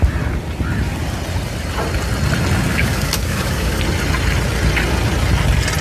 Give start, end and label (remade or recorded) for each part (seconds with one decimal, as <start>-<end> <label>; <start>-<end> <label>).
0.0-2.7 recorded; 2.7-3.8 remade; 3.8-5.8 recorded